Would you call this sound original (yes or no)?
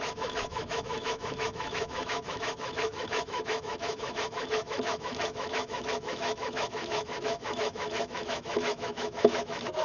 no